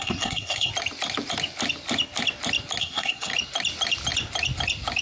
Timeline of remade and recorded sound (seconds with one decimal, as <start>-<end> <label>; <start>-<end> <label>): 0.0-0.7 remade; 0.7-2.8 recorded; 2.8-3.3 remade; 3.3-5.0 recorded